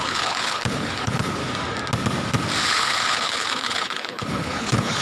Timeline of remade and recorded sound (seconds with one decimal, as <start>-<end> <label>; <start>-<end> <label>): 0.0-1.4 remade; 1.4-2.7 recorded; 2.7-5.0 remade